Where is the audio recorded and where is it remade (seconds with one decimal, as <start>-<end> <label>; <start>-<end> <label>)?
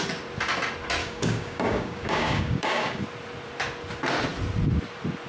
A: 0.0-1.0 recorded; 1.0-3.0 remade; 3.0-5.3 recorded